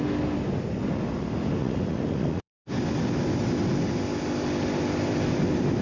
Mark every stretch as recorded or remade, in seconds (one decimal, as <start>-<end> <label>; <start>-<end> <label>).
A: 0.0-1.6 recorded; 1.6-2.6 remade; 2.6-5.8 recorded